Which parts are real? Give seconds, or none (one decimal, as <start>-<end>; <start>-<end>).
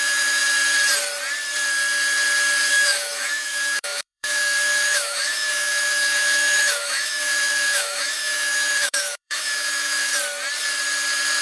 0.4-2.7; 10.1-11.4